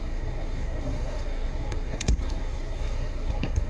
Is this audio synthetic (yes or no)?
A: yes